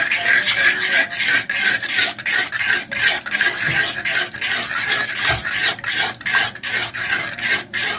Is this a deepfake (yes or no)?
no